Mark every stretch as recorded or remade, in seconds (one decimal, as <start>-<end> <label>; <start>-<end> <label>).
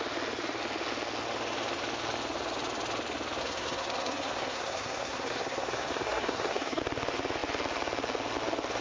0.0-3.4 recorded; 3.4-6.8 remade; 6.8-8.8 recorded